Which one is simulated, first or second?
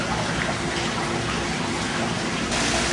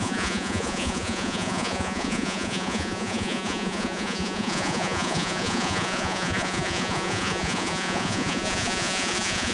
second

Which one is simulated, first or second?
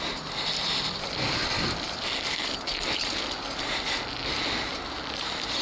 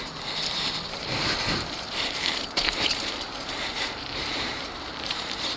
second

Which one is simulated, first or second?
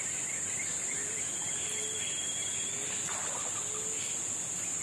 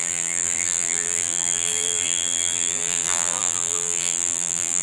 second